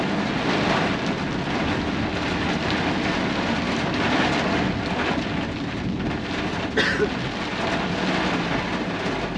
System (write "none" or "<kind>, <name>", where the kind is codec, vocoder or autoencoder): none